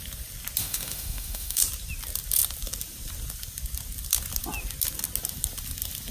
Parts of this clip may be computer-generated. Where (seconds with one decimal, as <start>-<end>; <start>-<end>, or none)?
0.6-1.6